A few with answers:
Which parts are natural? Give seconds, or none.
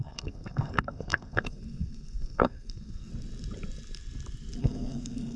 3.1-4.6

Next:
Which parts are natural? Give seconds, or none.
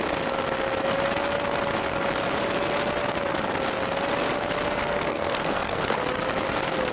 0.0-4.8; 6.0-6.9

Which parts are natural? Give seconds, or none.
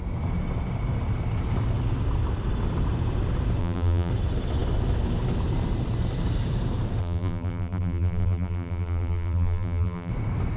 0.0-3.6; 4.1-7.0; 10.1-10.6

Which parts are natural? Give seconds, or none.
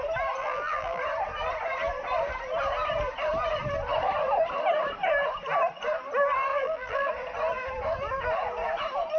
0.0-0.4; 1.0-6.5; 7.1-9.2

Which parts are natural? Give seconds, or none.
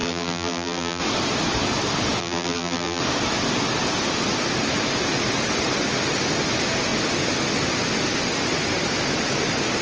1.0-2.2; 3.0-9.8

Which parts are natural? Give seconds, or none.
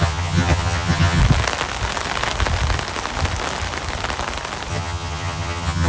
1.2-4.7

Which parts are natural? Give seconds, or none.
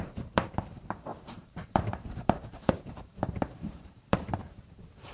none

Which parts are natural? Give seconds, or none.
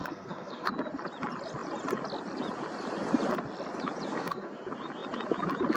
0.7-4.1; 4.6-5.8